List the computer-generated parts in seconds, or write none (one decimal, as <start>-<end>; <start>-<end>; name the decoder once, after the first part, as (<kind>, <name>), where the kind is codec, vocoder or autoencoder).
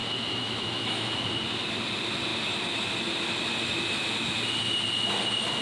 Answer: 0.0-1.3 (autoencoder, DAC-VAE)